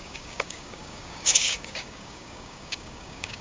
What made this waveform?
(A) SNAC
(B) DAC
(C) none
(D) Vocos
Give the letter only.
B